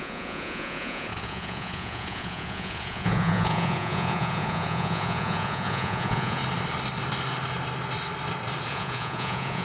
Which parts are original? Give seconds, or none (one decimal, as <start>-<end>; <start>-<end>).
6.4-8.7

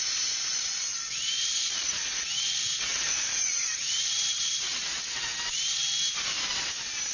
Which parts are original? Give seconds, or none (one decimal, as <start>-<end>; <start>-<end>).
5.3-7.1

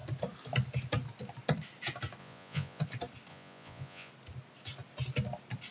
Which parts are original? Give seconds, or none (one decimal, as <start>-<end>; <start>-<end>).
0.0-2.2; 2.8-3.3; 4.1-5.7

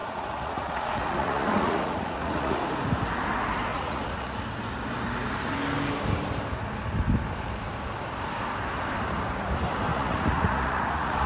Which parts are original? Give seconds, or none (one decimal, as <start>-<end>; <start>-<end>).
2.6-3.7; 4.4-9.9